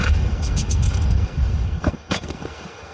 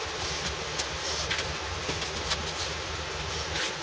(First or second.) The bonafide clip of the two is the second